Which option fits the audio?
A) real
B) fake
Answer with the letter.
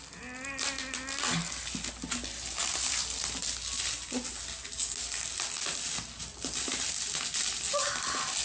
A